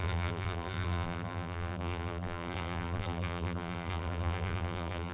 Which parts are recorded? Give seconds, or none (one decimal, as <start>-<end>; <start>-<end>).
none